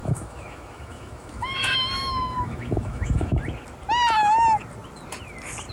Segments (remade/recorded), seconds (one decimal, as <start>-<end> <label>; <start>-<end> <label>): 0.0-3.4 remade; 3.4-5.7 recorded